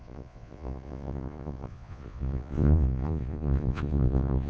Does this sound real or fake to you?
fake